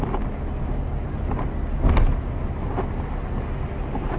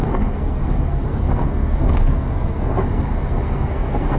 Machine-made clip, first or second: second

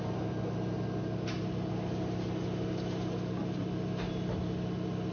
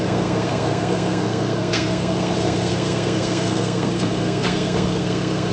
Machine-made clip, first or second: second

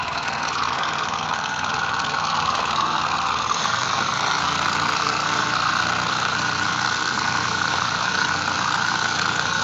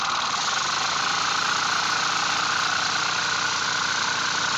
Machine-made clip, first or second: first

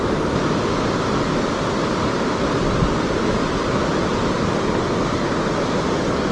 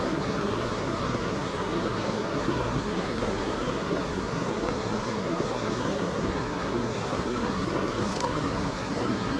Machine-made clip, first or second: second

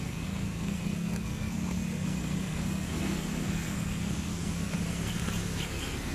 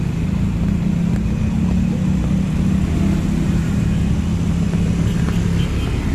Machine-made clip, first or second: first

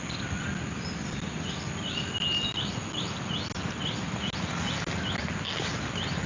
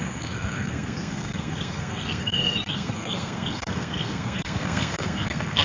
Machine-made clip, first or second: second